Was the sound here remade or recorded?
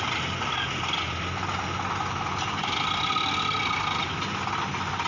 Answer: recorded